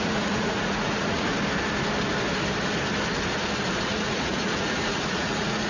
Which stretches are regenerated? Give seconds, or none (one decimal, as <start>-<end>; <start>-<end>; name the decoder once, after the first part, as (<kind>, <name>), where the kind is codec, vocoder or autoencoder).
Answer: 0.0-1.3 (vocoder, Vocos); 3.8-5.7